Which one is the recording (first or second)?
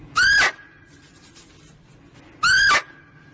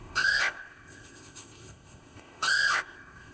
first